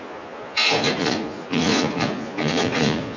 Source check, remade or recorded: remade